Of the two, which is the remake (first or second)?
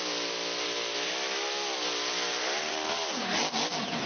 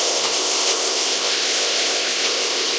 second